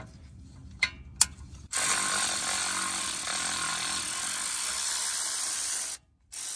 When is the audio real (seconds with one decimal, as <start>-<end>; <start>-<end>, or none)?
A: 0.0-6.6